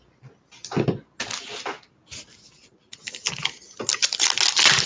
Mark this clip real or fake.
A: real